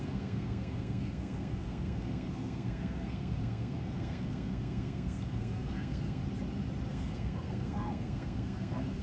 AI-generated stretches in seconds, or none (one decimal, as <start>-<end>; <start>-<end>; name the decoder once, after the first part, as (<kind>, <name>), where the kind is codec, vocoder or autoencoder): 0.0-6.2 (codec, SNAC); 6.9-9.0